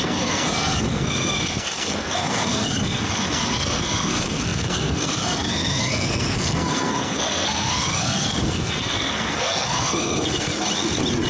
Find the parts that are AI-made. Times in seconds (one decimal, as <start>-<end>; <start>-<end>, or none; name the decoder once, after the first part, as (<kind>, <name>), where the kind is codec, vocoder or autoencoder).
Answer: 0.0-10.5 (codec, SNAC)